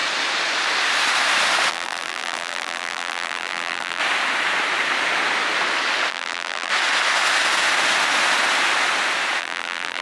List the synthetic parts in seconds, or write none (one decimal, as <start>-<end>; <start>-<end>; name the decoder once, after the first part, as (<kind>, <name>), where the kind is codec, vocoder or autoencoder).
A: 1.7-4.0 (vocoder, BigVGAN v2); 6.1-6.7; 9.4-10.0